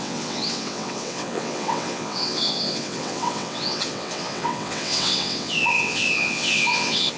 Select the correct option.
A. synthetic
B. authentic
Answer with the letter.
A